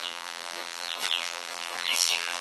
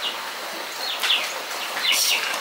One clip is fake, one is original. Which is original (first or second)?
second